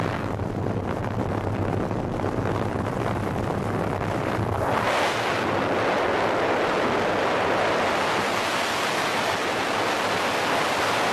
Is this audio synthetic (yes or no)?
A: no